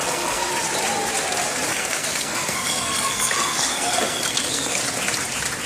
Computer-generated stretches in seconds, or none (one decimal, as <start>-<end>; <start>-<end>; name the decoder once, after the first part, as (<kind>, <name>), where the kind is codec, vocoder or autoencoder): 0.0-0.5 (codec, SNAC); 1.7-4.8